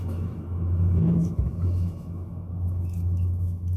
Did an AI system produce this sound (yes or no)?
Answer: yes